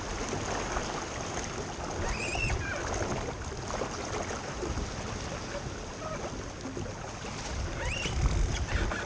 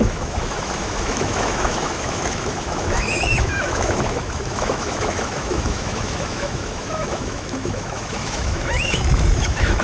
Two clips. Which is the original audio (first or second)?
first